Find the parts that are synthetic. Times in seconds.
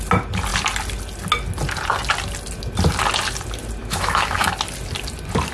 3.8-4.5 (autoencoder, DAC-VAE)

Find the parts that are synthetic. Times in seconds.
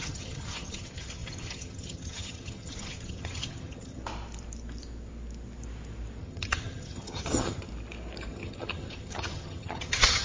0.0-4.0 (vocoder, HiFi-GAN); 6.2-7.7; 8.3-10.2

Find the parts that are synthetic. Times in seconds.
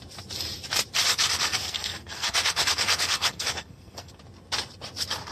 1.1-4.1 (codec, SNAC)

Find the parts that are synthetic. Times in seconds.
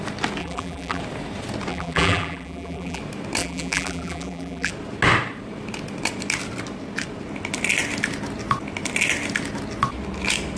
0.4-1.0 (vocoder, BigVGAN v2); 1.7-3.0; 3.4-4.7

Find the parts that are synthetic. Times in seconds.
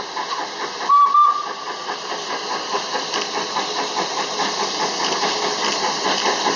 none